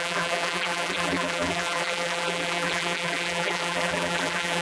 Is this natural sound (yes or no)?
no